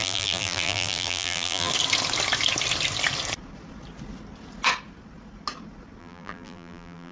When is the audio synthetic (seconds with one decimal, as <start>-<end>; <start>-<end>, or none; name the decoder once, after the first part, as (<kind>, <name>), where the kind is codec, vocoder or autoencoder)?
0.0-1.7 (vocoder, BigVGAN v2); 6.0-7.1

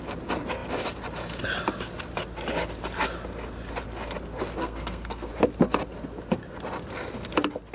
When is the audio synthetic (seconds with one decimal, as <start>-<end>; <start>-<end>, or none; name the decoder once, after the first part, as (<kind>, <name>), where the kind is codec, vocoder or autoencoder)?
4.6-5.3 (codec, SNAC)

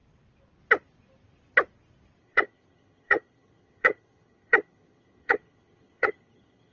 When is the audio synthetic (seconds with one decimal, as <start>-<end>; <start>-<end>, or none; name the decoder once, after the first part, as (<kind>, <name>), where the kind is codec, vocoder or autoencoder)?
2.2-6.7 (vocoder, HiFi-GAN)

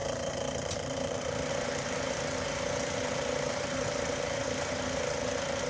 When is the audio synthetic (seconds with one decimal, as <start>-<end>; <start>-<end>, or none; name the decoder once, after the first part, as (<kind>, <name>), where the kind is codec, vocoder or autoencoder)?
0.0-5.7 (vocoder, BigVGAN v2)

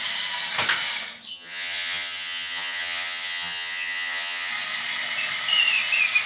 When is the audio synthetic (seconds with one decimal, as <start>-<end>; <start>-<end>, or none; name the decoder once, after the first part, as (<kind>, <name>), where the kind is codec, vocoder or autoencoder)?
1.3-4.5 (vocoder, HiFi-GAN)

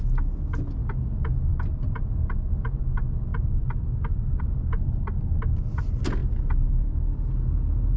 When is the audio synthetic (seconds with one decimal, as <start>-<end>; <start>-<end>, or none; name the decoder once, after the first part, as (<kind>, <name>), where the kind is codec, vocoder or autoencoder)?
6.2-7.3 (vocoder, BigVGAN v2)